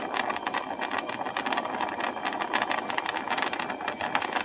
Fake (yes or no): no